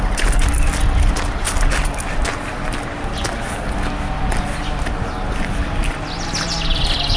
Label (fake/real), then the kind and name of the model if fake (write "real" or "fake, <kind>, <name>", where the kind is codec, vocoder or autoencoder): real